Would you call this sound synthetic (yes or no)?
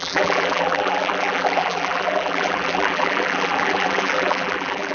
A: yes